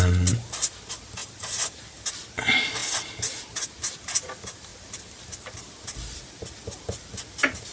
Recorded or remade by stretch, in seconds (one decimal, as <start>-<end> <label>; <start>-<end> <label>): 0.0-1.2 recorded; 1.2-2.1 remade; 2.1-7.7 recorded